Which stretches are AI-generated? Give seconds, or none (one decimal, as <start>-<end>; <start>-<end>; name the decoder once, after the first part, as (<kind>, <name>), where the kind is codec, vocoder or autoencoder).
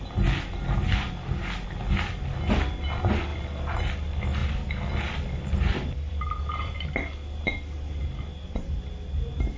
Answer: none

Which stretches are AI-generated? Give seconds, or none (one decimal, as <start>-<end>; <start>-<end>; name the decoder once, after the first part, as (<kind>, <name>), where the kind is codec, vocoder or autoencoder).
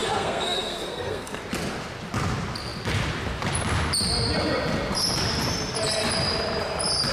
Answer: 0.0-1.4 (codec, SNAC)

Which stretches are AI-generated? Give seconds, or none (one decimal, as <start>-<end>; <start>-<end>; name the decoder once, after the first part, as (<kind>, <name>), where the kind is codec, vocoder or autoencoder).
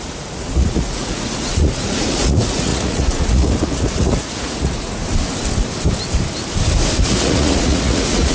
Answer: 0.0-5.0 (vocoder, Vocos); 7.0-8.3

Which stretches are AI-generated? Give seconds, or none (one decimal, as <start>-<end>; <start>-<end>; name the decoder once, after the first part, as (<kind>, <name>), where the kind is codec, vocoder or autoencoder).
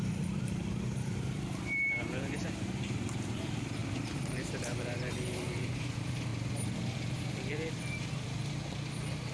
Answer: 0.0-6.3 (vocoder, BigVGAN v2); 7.1-8.4